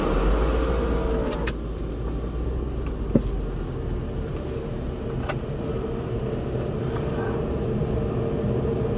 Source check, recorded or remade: recorded